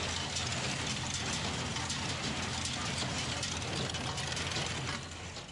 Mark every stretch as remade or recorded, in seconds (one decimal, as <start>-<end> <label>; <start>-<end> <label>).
0.0-5.5 recorded